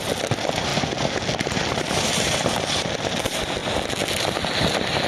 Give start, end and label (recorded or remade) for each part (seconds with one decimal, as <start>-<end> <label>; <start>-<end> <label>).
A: 0.0-0.7 remade; 0.7-1.2 recorded; 1.2-3.6 remade; 3.6-5.1 recorded